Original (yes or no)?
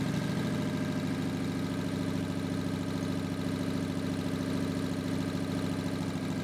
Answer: yes